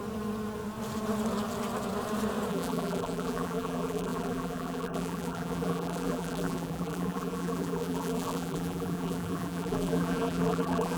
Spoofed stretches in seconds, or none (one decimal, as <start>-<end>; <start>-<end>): 2.5-11.0